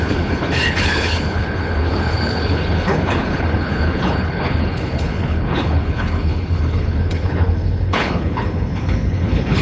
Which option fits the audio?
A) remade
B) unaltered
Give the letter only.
A